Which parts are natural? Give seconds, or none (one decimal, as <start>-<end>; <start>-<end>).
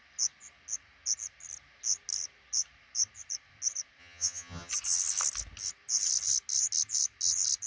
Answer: 0.0-4.0; 4.7-7.7